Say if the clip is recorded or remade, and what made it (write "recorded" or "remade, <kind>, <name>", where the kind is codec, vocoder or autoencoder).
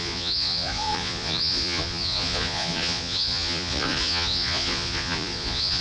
remade, vocoder, Vocos